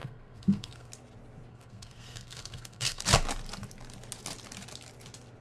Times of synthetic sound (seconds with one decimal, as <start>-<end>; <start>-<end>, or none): 0.0-0.9; 1.5-3.0